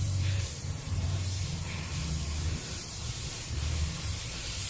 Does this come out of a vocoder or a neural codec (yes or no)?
yes